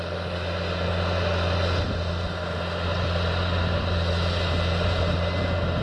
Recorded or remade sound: recorded